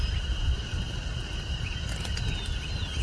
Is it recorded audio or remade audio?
recorded